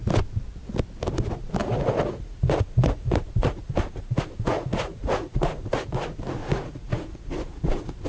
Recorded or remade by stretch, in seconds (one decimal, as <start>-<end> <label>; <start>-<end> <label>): 0.0-1.6 recorded; 1.6-6.0 remade; 6.0-6.4 recorded; 6.4-8.1 remade